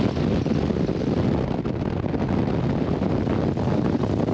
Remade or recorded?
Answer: recorded